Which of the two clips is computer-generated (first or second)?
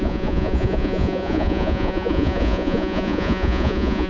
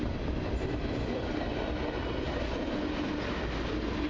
first